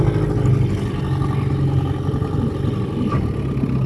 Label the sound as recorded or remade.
recorded